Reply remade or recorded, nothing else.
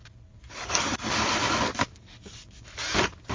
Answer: recorded